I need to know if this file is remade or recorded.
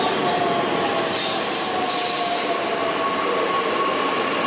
recorded